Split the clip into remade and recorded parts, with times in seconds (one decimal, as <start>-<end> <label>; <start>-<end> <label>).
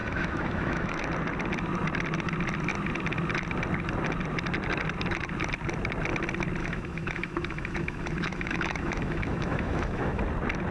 0.0-1.0 remade; 1.0-6.6 recorded; 6.6-10.2 remade; 10.2-10.7 recorded